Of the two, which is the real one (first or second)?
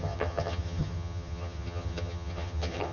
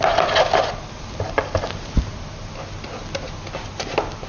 second